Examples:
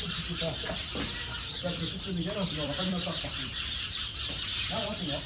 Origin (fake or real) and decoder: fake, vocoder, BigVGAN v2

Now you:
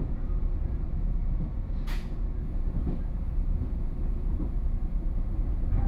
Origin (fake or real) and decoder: fake, vocoder, Vocos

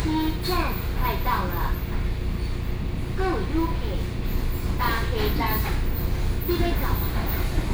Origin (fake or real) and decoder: real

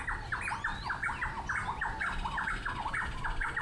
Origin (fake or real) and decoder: real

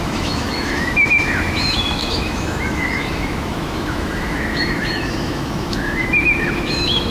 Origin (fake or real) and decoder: fake, autoencoder, DAC-VAE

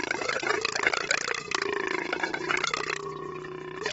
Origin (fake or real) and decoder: real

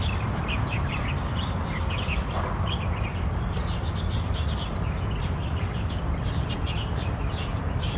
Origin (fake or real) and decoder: real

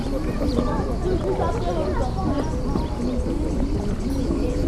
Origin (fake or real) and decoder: real